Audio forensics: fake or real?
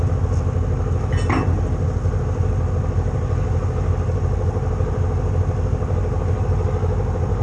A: real